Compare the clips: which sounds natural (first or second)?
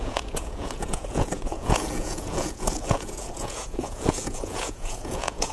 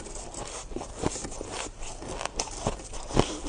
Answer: second